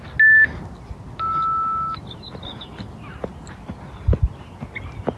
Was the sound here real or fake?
real